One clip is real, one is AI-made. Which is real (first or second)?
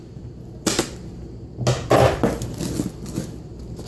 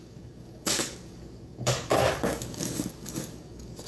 first